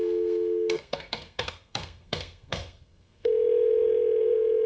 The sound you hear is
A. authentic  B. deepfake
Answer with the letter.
B